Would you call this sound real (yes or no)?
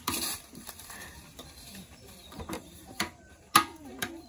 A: no